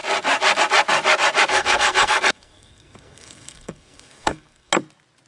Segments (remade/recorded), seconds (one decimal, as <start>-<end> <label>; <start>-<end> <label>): 0.0-1.5 recorded; 1.5-4.7 remade; 4.7-5.3 recorded